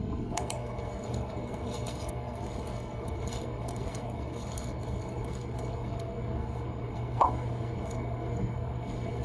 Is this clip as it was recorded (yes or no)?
no